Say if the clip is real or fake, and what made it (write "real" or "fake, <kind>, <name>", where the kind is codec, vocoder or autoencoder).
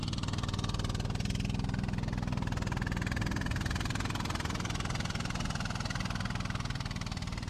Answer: real